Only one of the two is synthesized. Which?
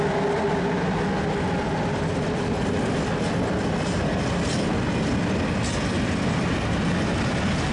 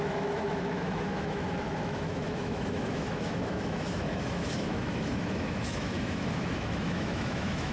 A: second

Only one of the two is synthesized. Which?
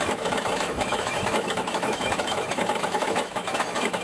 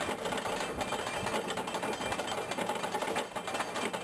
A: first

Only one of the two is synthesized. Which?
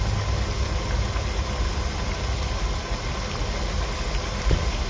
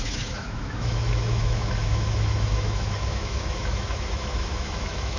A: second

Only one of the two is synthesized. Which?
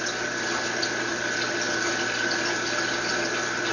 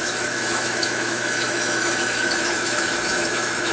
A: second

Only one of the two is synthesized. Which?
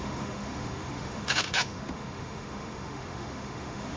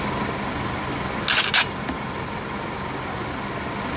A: first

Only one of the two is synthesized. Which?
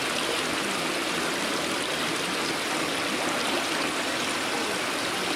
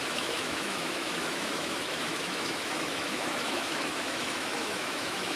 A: second